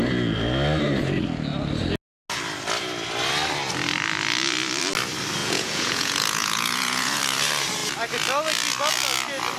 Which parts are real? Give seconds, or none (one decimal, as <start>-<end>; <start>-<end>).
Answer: 0.0-5.4; 7.2-9.6